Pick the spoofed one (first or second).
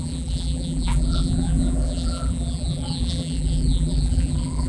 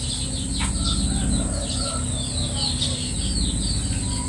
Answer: first